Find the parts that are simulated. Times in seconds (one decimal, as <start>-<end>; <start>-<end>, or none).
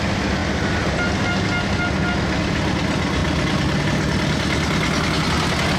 none